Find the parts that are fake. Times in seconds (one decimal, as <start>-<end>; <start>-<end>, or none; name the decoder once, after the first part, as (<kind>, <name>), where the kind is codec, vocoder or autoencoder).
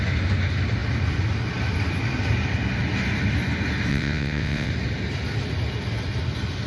3.9-4.7 (vocoder, WaveNeXt)